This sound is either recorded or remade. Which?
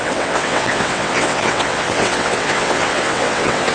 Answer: remade